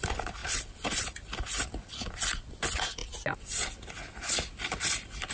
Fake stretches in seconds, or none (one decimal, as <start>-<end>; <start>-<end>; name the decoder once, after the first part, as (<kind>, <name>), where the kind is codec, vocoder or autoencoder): 0.4-2.5 (vocoder, BigVGAN v2)